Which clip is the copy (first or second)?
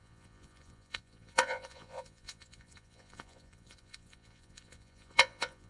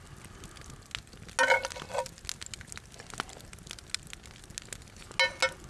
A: first